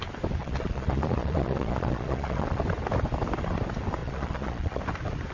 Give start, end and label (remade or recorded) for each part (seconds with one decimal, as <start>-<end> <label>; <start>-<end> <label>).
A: 0.0-0.4 recorded; 0.4-2.6 remade; 2.6-4.0 recorded; 4.0-4.8 remade; 4.8-5.3 recorded